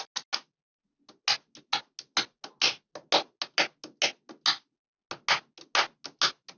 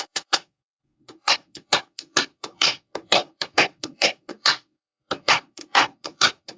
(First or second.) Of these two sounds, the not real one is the second